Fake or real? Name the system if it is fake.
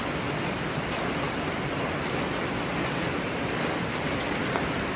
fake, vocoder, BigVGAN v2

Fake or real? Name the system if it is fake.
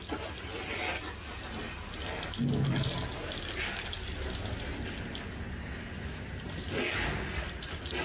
real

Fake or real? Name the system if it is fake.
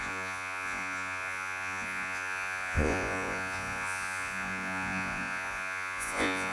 fake, vocoder, Vocos